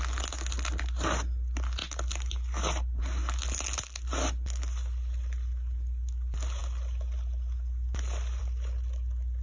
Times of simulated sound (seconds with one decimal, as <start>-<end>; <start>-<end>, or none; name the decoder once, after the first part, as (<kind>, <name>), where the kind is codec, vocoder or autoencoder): none

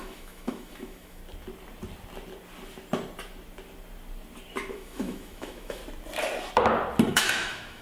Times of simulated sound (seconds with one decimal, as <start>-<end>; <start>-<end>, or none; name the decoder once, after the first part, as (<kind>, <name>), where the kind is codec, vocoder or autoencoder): 0.0-1.2 (autoencoder, DAC-VAE); 4.7-5.8; 7.1-7.8

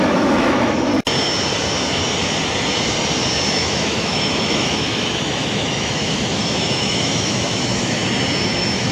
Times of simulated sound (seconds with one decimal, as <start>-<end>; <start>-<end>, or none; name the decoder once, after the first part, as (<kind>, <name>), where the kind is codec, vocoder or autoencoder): 0.0-0.9 (autoencoder, DAC-VAE); 3.5-8.0; 8.5-8.9

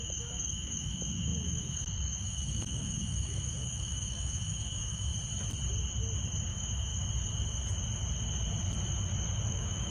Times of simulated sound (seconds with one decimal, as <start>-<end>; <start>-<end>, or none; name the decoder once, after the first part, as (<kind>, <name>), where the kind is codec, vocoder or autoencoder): 0.0-5.1 (autoencoder, DAC-VAE); 6.5-6.9; 9.5-9.9

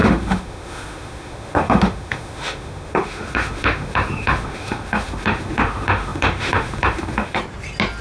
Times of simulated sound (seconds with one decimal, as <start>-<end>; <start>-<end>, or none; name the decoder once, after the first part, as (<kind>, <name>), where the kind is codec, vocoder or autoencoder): 0.0-7.4 (autoencoder, DAC-VAE)

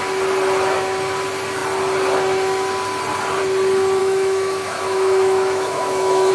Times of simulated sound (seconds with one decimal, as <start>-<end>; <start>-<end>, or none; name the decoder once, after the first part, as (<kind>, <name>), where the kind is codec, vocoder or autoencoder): 4.0-6.3 (autoencoder, DAC-VAE)